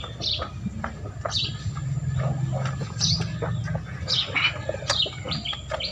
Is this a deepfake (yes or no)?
no